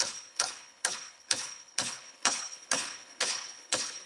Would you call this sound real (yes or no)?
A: no